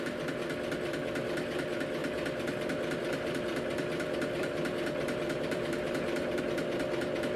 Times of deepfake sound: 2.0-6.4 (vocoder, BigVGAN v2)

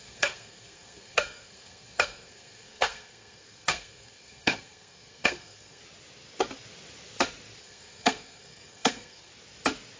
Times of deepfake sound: 0.0-5.8 (codec, SNAC); 7.6-9.3

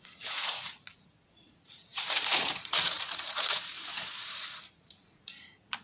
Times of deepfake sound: 0.0-5.8 (vocoder, Vocos)

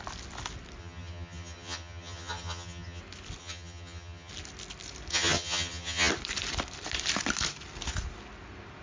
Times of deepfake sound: 0.8-3.0 (vocoder, HiFi-GAN); 3.4-4.3; 5.1-6.1